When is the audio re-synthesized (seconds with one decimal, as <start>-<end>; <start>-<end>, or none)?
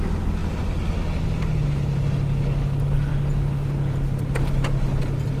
none